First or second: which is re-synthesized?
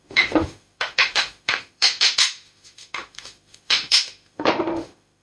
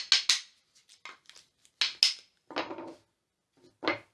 first